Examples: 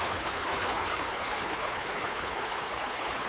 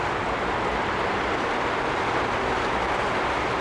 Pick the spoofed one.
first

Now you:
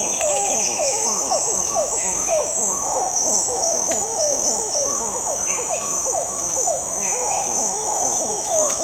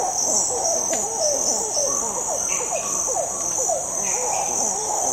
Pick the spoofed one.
first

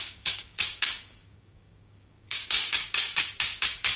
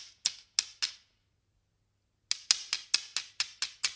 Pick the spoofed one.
first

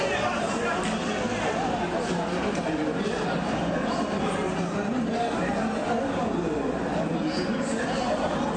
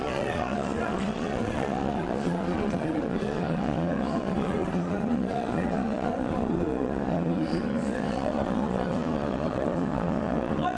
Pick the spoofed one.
second